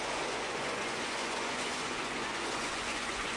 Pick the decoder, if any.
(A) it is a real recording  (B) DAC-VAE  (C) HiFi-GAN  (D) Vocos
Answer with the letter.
D